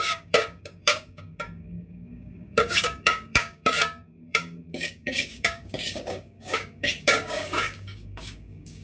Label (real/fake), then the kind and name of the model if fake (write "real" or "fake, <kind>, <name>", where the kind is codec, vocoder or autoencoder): fake, codec, DAC